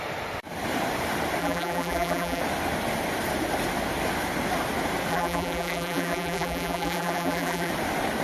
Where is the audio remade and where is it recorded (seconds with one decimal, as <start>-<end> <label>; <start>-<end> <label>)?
0.0-1.4 recorded; 1.4-2.4 remade; 2.4-5.1 recorded; 5.1-7.7 remade; 7.7-8.2 recorded